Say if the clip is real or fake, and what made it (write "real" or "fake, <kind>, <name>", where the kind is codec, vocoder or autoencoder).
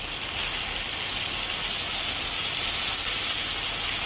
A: real